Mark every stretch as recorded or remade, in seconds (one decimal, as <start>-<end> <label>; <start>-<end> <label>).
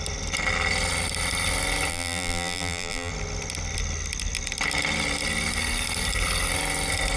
0.0-1.9 recorded; 1.9-3.1 remade; 3.1-7.2 recorded